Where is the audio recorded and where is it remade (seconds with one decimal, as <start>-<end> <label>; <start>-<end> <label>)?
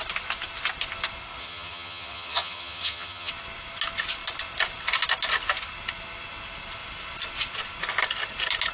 0.0-1.4 recorded; 1.4-3.3 remade; 3.3-8.7 recorded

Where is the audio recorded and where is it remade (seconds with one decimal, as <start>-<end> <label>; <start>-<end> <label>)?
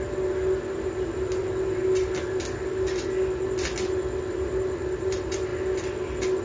0.0-6.4 recorded